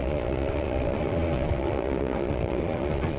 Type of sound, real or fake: fake